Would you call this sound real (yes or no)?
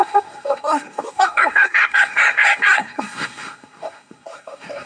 no